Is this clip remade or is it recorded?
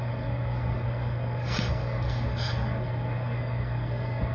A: remade